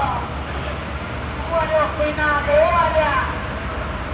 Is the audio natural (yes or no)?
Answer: yes